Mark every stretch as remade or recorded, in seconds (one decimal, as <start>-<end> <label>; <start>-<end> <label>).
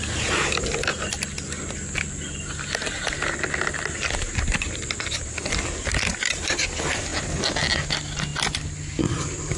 0.0-9.6 recorded